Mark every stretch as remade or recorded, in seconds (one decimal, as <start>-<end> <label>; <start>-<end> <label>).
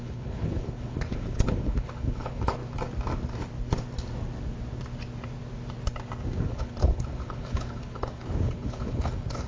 0.0-2.6 remade; 2.6-6.4 recorded; 6.4-9.5 remade